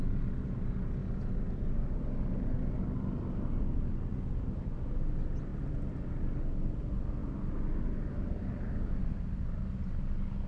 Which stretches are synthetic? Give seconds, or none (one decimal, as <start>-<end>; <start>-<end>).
none